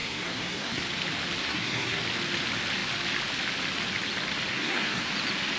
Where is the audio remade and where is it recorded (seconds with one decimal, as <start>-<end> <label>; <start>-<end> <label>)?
0.0-0.8 remade; 0.8-1.4 recorded; 1.4-2.0 remade; 2.0-4.5 recorded; 4.5-5.1 remade; 5.1-5.6 recorded